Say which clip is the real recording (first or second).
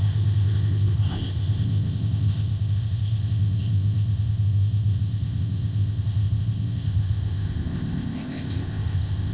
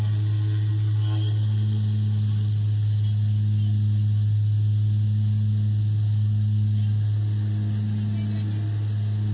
second